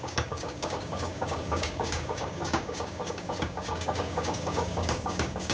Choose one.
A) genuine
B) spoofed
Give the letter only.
B